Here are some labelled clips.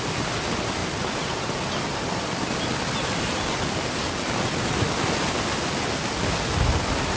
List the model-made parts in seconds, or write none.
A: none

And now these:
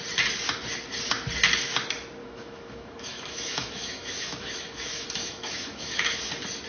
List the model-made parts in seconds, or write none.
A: 2.2-6.2 (autoencoder, DAC-VAE)

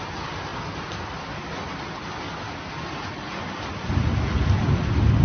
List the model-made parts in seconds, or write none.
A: none